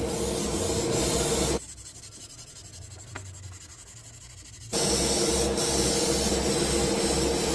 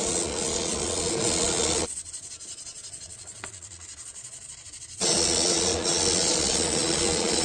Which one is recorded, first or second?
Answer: first